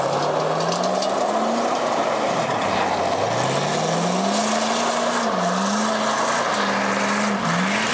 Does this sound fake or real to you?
real